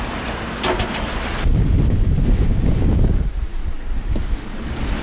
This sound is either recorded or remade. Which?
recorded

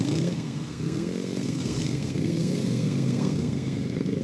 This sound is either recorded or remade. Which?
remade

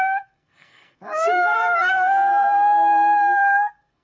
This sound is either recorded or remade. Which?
remade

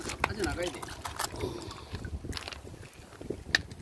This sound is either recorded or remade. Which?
recorded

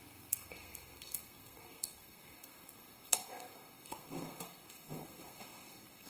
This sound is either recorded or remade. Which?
remade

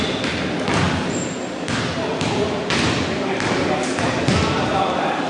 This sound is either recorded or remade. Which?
recorded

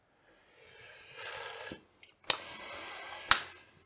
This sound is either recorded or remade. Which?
recorded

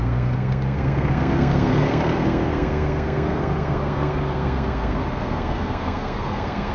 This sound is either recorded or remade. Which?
remade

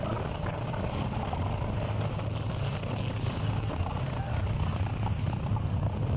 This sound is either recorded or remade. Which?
recorded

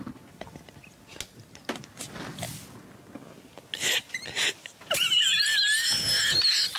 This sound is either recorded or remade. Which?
recorded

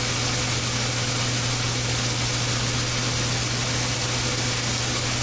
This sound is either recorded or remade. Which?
recorded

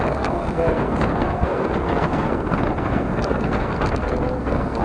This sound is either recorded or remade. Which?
remade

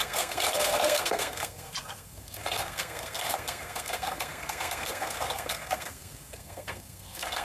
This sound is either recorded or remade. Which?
remade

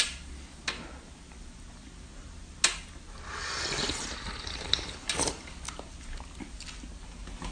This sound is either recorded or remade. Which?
recorded